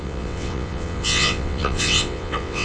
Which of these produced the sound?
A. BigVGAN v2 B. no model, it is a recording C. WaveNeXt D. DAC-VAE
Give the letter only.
C